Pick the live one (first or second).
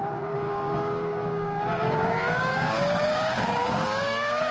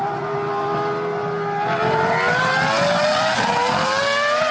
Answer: second